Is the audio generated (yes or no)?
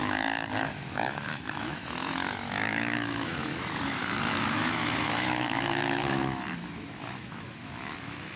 yes